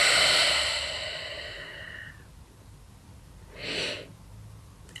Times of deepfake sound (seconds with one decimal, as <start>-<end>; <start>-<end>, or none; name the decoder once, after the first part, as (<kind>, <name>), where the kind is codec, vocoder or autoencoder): none